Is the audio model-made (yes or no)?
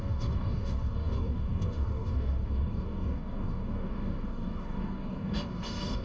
yes